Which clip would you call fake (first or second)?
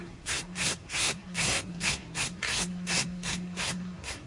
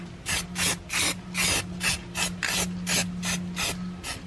first